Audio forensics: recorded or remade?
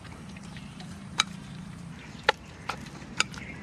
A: remade